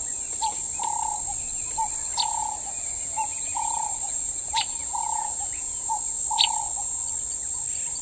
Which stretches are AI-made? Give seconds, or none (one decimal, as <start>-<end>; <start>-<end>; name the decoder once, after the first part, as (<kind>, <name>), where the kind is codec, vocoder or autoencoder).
2.4-5.6 (vocoder, BigVGAN v2)